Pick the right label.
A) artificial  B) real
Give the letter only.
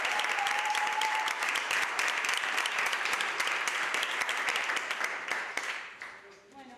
A